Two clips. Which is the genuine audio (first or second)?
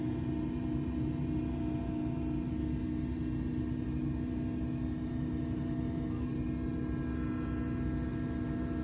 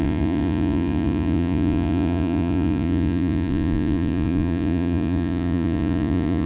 first